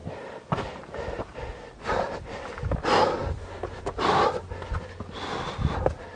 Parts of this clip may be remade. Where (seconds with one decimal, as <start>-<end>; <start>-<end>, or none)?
none